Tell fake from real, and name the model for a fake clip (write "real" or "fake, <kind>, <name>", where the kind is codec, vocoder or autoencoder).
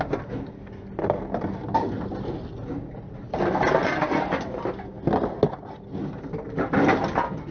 real